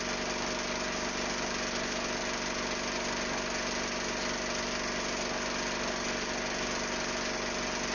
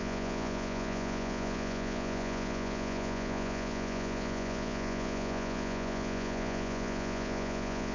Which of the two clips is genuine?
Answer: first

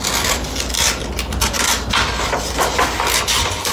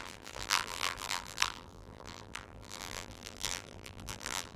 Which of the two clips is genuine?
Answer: first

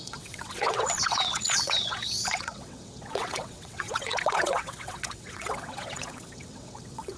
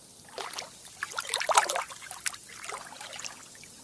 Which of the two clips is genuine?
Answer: second